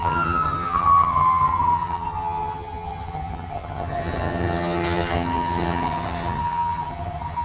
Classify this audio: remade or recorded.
remade